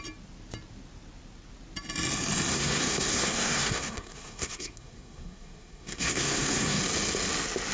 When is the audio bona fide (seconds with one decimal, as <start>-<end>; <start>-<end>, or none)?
0.0-2.5; 6.8-7.7